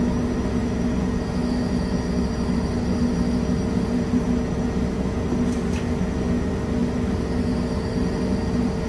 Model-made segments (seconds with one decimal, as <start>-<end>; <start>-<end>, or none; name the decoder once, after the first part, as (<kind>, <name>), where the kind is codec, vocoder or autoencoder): none